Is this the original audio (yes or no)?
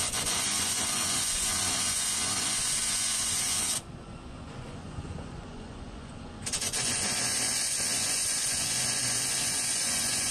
no